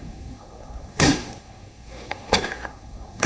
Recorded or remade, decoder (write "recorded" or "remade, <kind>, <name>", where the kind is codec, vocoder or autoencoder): remade, codec, SNAC